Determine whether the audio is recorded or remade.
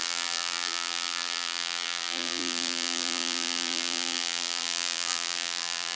remade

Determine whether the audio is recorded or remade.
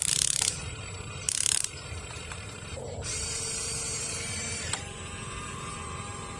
remade